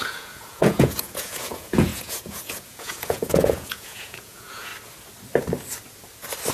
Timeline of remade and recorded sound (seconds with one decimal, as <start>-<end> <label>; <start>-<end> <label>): 0.0-4.7 remade; 4.7-6.5 recorded